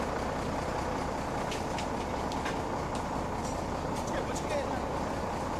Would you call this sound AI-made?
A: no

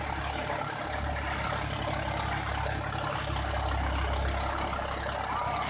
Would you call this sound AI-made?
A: no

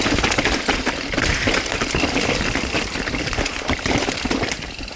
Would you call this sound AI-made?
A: yes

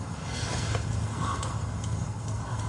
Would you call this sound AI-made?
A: yes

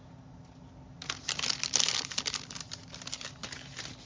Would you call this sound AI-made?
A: no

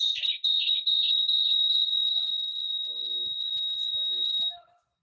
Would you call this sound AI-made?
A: no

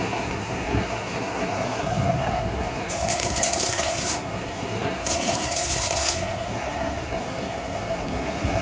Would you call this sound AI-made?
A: yes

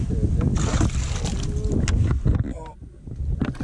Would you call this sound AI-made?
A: no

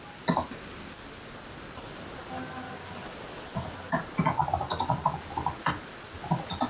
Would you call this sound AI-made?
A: no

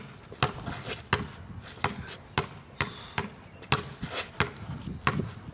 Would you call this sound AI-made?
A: no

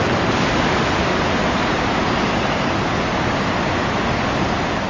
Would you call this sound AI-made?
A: no